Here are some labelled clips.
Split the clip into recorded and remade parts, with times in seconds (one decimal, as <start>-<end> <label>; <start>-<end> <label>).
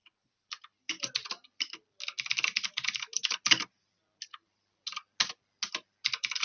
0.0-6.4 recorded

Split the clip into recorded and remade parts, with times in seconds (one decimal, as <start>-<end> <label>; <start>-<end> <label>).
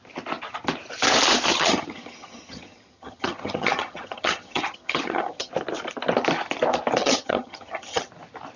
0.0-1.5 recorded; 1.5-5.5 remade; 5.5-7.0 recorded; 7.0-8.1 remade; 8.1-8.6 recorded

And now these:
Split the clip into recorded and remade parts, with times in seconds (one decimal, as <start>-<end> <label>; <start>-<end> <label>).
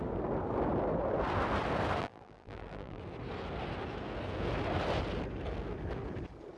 0.0-2.0 recorded; 2.0-3.0 remade; 3.0-6.6 recorded